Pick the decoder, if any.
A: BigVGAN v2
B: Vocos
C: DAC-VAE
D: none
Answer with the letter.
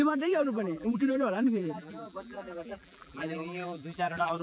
A